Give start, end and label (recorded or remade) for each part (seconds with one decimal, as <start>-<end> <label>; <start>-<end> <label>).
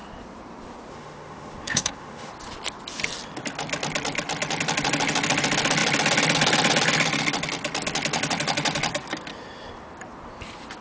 0.0-0.9 recorded; 0.9-2.3 remade; 2.3-10.8 recorded